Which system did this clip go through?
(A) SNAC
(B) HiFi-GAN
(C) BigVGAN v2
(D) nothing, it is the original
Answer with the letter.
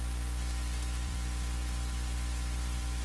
C